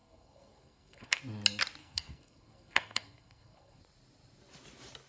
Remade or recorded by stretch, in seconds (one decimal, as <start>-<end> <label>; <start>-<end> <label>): 0.0-1.2 remade; 1.2-1.8 recorded; 1.8-3.8 remade; 3.8-5.1 recorded